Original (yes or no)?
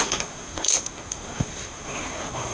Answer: no